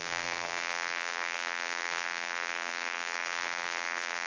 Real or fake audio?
fake